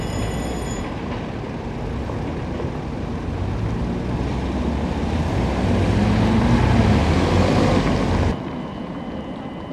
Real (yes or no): yes